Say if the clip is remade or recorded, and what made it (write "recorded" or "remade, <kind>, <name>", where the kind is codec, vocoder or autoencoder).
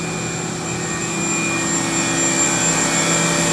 recorded